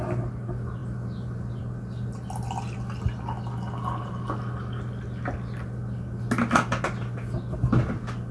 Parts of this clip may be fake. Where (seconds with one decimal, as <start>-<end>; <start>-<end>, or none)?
none